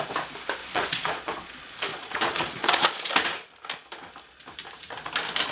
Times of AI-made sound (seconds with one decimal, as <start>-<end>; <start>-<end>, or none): 0.6-1.5; 1.9-3.1